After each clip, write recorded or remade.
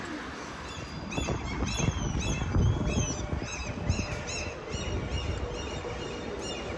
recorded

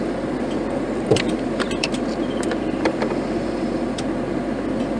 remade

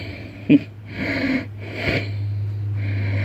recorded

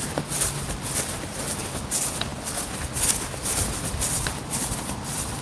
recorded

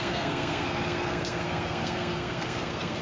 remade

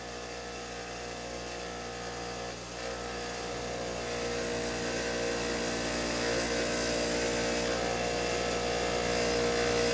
recorded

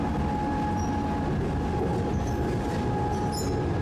recorded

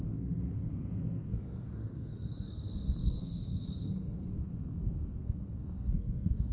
remade